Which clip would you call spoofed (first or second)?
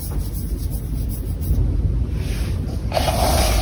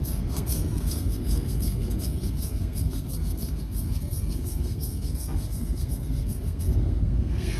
second